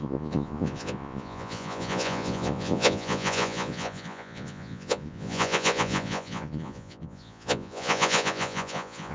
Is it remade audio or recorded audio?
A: remade